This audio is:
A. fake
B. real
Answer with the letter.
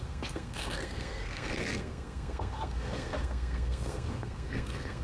A